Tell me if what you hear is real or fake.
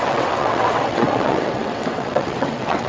fake